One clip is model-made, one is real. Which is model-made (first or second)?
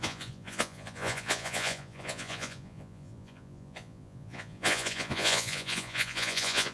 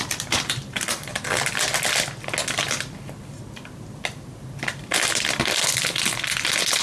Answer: first